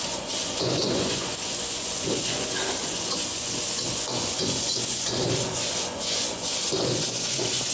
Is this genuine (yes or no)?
no